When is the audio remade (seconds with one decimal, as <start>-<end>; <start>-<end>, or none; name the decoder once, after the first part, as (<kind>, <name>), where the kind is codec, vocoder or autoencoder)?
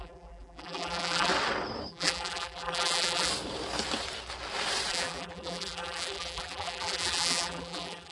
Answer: 0.0-1.3 (vocoder, BigVGAN v2); 1.9-3.3; 4.9-8.1